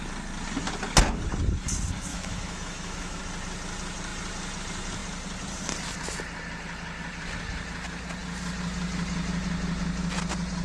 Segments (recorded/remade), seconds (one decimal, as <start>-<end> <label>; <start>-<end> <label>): 0.0-2.1 recorded; 2.1-3.2 remade; 3.2-10.6 recorded